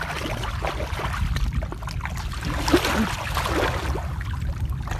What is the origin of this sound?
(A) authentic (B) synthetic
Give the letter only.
A